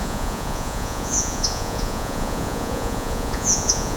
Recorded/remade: remade